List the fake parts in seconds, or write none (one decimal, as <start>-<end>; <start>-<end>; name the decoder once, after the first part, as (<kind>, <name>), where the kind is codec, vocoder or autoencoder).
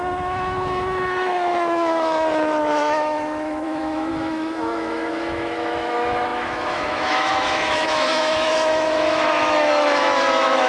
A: 0.0-10.7 (autoencoder, DAC-VAE)